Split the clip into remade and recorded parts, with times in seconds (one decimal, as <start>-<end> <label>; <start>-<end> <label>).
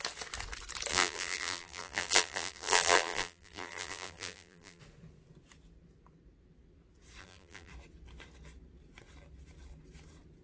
0.0-0.9 recorded; 0.9-4.8 remade; 4.8-7.2 recorded; 7.2-7.7 remade; 7.7-10.4 recorded